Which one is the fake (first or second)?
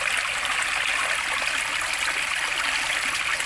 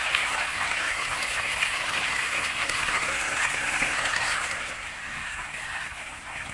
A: second